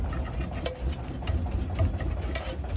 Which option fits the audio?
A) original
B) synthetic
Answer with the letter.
A